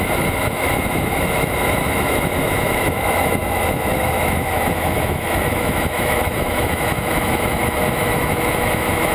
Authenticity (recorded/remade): remade